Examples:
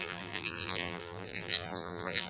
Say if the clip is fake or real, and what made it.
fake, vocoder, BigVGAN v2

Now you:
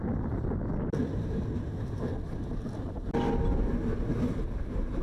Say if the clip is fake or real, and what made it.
real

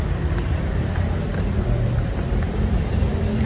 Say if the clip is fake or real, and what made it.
fake, vocoder, BigVGAN v2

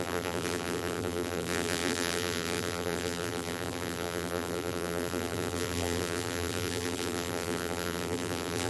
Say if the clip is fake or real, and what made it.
fake, vocoder, BigVGAN v2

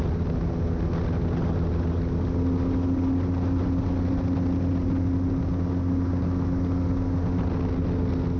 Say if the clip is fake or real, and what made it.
real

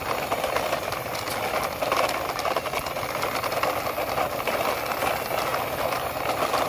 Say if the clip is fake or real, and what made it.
real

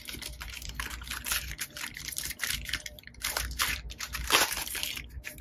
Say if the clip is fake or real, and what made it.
fake, vocoder, BigVGAN v2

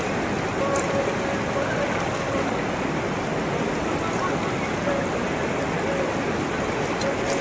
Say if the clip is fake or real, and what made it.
real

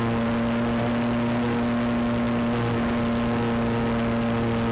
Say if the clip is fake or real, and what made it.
real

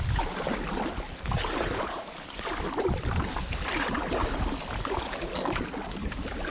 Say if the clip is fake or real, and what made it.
real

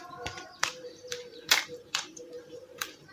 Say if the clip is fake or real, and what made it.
fake, vocoder, BigVGAN v2